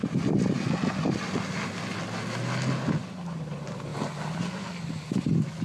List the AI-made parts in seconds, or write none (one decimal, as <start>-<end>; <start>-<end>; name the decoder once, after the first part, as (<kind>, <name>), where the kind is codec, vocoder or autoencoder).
none